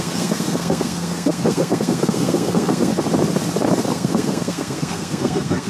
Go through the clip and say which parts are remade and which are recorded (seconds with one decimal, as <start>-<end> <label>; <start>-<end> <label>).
0.0-2.9 remade; 2.9-3.9 recorded; 3.9-5.7 remade